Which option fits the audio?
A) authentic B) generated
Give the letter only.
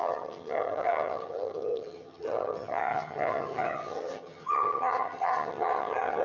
B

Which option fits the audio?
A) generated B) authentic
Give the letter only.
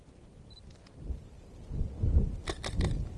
B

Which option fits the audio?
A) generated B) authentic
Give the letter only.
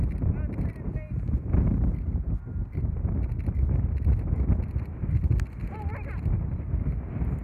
B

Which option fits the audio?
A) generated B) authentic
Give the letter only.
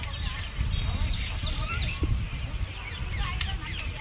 B